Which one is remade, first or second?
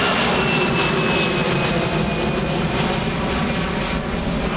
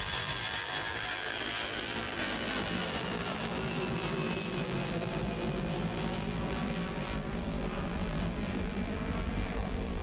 second